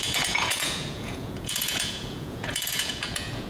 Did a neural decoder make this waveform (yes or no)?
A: yes